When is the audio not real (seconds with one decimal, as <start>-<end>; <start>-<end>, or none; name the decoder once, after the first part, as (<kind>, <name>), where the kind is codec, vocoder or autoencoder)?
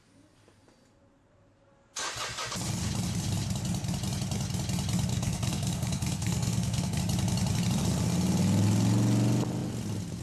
5.1-7.0 (codec, SNAC)